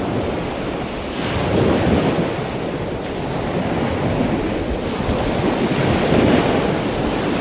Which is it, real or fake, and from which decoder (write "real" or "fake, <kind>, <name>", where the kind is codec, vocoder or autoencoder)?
real